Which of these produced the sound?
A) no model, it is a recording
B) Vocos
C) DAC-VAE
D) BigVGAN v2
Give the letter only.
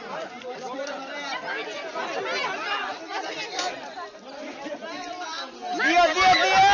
A